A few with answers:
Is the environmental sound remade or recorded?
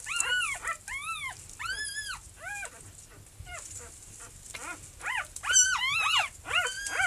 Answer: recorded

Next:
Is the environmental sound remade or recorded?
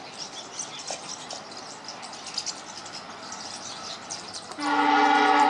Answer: recorded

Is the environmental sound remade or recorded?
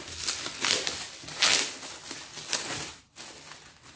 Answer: recorded